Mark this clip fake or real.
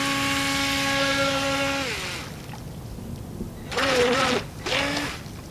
real